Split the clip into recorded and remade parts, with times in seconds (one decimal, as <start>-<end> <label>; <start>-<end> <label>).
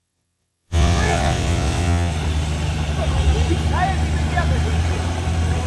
0.0-2.1 remade; 2.1-5.7 recorded